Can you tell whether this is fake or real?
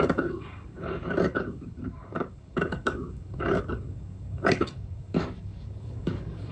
fake